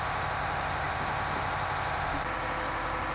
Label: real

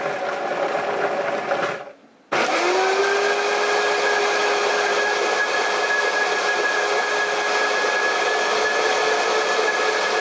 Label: real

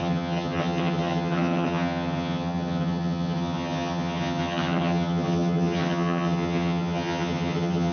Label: fake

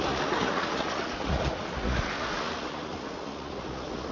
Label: fake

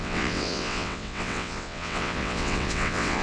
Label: fake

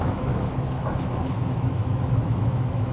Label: fake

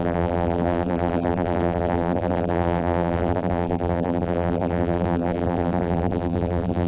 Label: fake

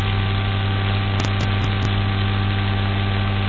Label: real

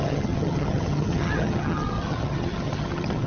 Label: fake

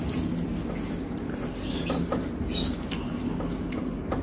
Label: real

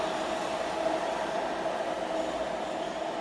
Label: real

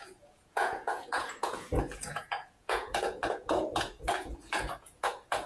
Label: fake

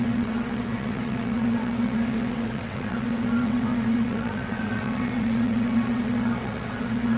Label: fake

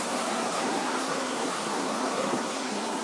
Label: fake